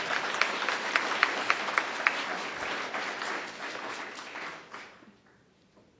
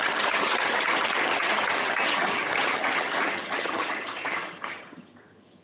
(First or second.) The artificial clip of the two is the second